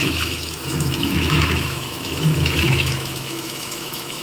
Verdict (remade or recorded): remade